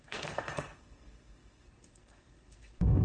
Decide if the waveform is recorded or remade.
remade